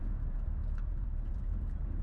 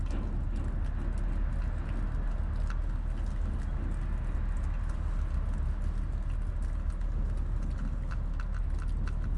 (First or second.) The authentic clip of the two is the second